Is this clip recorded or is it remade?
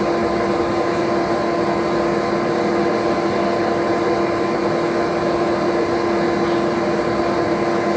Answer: recorded